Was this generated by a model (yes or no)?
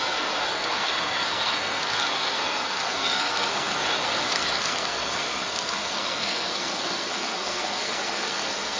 yes